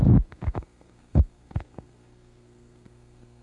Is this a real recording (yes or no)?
no